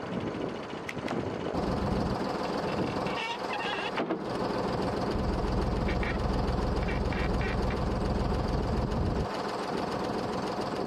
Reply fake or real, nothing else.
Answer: fake